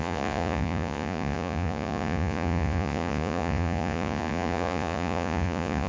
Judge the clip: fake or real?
fake